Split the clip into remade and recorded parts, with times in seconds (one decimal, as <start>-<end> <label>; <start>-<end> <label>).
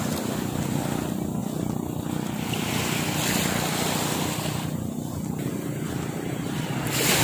0.0-7.2 recorded